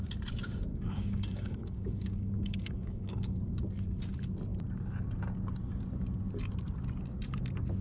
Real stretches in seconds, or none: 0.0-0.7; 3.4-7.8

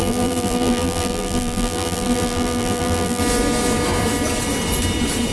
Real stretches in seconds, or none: 3.2-5.3

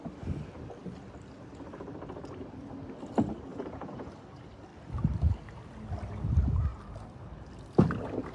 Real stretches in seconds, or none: 0.0-3.5; 4.1-8.3

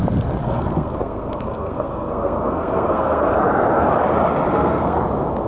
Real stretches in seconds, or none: 0.0-0.4; 3.3-4.5; 5.0-5.5

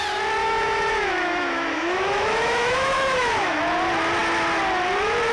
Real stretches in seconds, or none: 0.0-0.4; 3.6-5.3

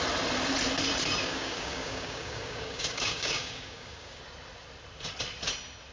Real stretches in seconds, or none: 0.0-1.2; 4.2-5.9

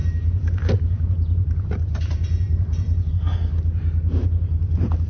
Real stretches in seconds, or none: 0.0-3.1; 3.5-5.1

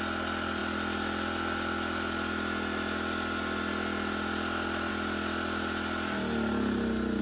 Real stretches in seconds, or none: 0.0-7.2